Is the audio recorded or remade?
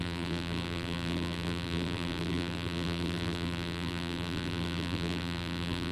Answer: remade